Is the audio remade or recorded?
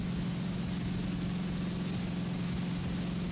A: recorded